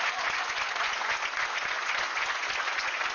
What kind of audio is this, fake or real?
fake